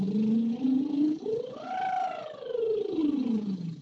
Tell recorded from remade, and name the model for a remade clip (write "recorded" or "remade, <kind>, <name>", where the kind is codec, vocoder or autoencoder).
recorded